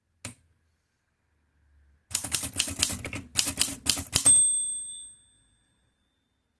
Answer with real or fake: real